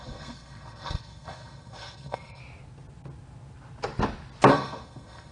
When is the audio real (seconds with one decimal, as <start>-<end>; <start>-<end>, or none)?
2.4-4.5